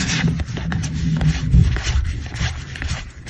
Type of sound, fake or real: fake